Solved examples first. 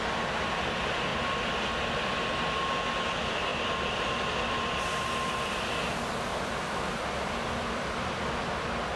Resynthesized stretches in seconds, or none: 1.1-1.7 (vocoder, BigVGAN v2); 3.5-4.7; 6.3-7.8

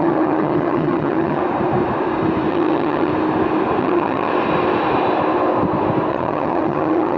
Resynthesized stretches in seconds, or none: 0.0-1.4 (vocoder, HiFi-GAN); 2.5-3.1; 3.8-4.3; 6.1-7.2